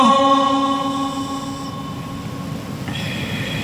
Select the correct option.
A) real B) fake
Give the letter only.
A